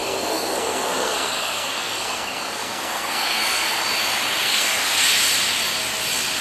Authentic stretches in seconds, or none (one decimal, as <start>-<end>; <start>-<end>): 3.8-4.4; 5.1-6.4